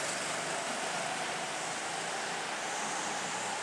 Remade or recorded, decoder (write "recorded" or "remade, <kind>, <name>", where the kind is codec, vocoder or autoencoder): recorded